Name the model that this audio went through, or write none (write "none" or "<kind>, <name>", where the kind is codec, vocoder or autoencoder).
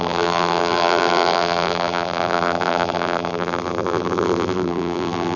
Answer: vocoder, BigVGAN v2